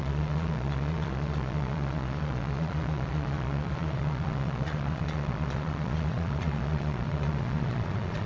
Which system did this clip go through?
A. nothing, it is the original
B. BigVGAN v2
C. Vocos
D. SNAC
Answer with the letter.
C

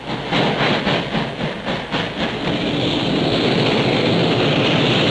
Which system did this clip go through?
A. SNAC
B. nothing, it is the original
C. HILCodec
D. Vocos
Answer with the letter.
B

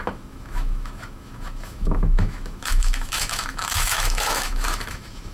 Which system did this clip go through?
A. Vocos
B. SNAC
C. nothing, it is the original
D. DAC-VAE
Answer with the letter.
D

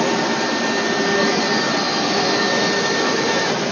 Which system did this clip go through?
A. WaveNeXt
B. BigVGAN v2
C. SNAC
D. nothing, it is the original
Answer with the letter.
D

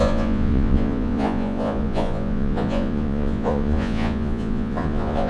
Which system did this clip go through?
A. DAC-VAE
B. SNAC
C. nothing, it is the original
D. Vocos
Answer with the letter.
D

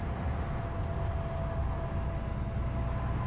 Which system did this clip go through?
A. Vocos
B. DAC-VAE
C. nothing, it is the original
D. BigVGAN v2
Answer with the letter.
C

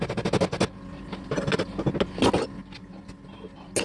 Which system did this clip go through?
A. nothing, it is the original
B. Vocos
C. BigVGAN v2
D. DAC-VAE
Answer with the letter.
A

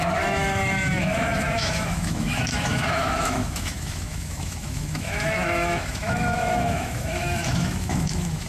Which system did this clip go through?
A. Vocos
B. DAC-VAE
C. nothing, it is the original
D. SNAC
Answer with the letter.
B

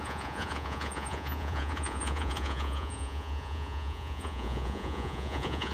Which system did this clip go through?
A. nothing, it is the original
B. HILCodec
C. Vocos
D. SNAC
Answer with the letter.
C